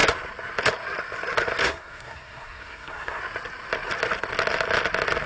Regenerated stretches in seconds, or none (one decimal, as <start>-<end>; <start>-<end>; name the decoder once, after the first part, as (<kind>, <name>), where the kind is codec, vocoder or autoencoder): 1.6-3.2 (codec, SNAC)

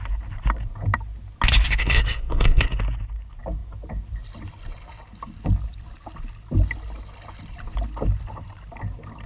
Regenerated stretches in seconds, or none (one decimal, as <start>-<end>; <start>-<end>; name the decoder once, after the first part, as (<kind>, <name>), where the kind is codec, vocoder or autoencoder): 1.8-2.8 (codec, SNAC)

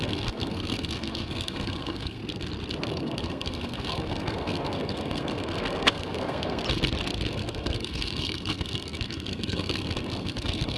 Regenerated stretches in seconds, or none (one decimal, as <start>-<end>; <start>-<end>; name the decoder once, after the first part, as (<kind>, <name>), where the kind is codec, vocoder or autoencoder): 0.0-2.2 (codec, SNAC); 2.9-6.6; 7.3-10.8

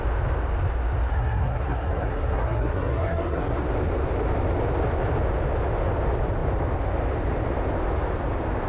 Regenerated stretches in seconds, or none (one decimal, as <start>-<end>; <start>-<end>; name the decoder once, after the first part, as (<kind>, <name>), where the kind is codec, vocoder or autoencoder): 1.1-3.6 (codec, SNAC)

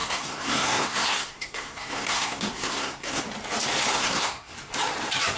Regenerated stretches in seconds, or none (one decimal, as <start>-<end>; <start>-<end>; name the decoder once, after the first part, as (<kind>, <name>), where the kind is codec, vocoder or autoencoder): 0.0-3.2 (codec, SNAC); 3.9-4.5

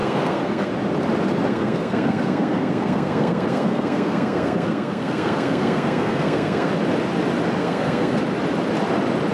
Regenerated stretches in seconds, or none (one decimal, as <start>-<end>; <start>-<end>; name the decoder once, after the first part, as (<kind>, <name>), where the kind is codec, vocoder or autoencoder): 0.0-0.7 (codec, SNAC); 1.5-6.7; 7.6-8.2

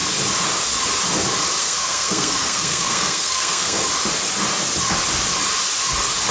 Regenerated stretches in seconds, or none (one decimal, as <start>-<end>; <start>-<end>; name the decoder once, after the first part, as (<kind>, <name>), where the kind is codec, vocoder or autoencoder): 1.6-3.8 (codec, SNAC)